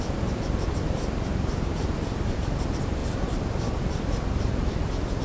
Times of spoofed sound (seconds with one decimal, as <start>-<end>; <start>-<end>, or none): none